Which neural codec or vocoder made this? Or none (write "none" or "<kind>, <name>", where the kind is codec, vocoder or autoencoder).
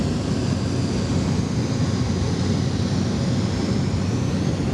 none